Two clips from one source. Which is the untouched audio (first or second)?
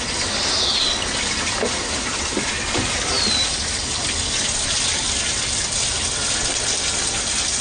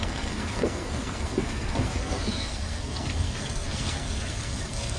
first